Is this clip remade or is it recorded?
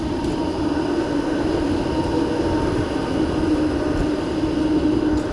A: recorded